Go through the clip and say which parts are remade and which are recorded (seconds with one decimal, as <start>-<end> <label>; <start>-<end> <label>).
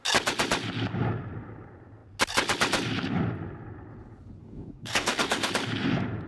0.0-4.4 recorded; 4.4-5.5 remade; 5.5-6.3 recorded